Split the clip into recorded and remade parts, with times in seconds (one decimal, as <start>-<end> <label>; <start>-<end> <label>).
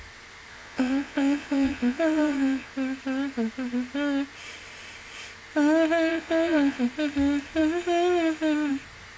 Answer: 0.0-0.5 recorded; 0.5-2.7 remade; 2.7-6.1 recorded; 6.1-6.8 remade; 6.8-9.2 recorded